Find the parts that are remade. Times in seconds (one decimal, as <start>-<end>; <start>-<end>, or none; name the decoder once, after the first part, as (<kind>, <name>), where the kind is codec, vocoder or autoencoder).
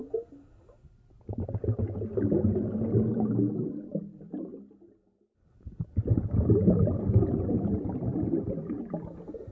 4.0-4.5 (vocoder, BigVGAN v2); 7.5-8.1; 8.6-9.5